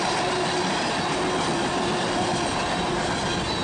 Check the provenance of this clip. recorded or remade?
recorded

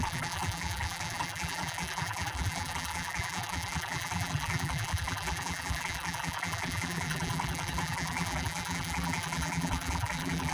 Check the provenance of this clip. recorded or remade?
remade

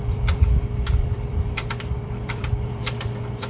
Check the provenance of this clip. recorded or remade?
remade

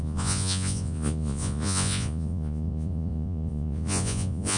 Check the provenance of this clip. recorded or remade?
remade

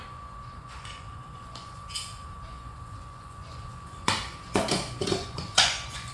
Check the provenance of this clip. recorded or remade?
remade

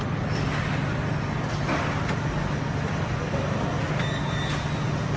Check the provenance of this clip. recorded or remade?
recorded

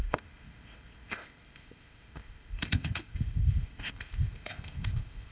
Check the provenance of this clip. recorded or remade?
remade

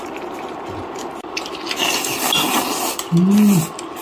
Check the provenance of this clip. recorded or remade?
recorded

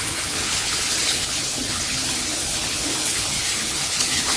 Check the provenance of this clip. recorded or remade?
remade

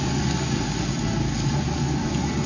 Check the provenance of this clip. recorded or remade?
recorded